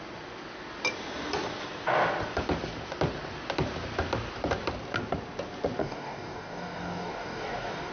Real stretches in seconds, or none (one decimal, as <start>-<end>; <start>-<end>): 0.0-5.8